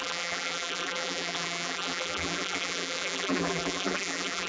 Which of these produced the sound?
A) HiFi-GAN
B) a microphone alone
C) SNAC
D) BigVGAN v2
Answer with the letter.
D